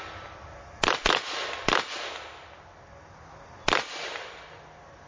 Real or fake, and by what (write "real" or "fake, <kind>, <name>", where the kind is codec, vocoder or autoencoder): real